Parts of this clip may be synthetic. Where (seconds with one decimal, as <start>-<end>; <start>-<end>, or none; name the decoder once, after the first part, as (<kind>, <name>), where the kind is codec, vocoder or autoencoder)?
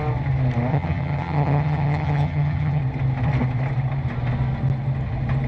0.7-2.8 (vocoder, HiFi-GAN)